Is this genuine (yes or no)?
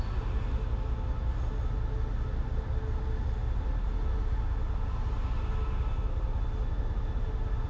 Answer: yes